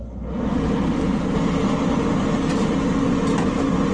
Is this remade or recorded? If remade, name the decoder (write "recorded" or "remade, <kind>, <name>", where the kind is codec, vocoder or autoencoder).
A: recorded